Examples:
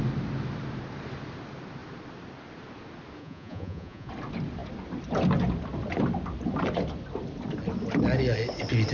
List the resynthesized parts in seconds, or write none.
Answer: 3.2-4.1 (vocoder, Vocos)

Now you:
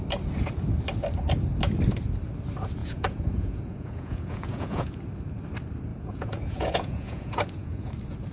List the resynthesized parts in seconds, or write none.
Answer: 2.8-5.0 (vocoder, Vocos); 5.9-7.9

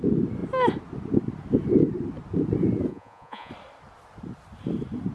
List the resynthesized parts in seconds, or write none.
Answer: 2.9-3.5 (vocoder, Vocos)

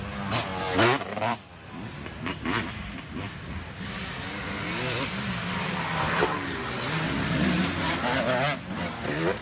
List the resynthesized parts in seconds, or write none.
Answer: none